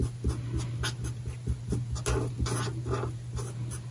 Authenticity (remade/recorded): recorded